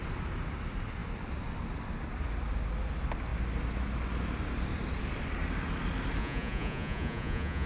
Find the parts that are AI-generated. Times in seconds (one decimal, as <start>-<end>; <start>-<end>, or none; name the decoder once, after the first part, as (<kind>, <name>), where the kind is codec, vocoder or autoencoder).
6.2-7.7 (vocoder, Vocos)